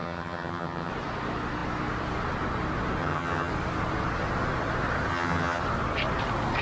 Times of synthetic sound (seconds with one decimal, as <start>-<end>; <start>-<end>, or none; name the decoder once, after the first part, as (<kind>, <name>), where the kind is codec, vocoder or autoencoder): 0.0-0.9 (vocoder, HiFi-GAN); 3.0-3.5; 5.1-5.6